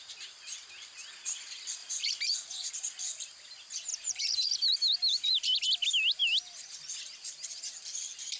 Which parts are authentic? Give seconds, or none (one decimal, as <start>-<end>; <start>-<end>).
0.0-1.8; 2.7-3.9; 5.6-8.4